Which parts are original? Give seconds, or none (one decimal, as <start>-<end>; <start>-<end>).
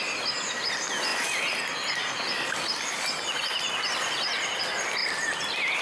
0.0-5.8